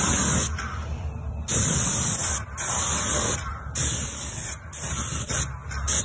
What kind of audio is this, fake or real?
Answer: real